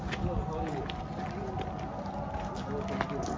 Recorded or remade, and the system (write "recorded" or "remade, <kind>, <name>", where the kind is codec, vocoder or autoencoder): recorded